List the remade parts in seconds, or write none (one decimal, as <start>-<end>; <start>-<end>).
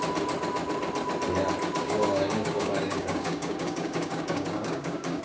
1.8-5.2